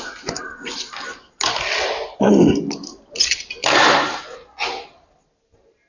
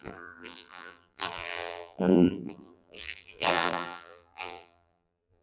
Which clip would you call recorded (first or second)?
first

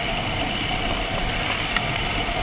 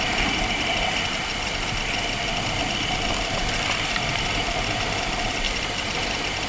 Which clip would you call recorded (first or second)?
first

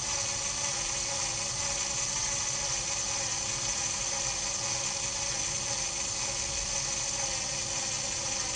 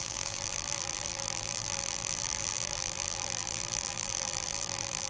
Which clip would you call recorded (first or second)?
first